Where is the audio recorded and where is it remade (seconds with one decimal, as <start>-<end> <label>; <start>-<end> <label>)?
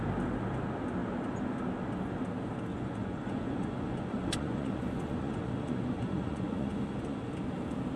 0.0-2.7 recorded; 2.7-7.3 remade; 7.3-8.0 recorded